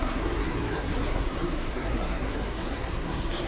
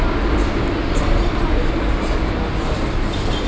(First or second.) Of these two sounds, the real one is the second